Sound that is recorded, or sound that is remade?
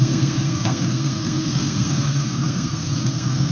remade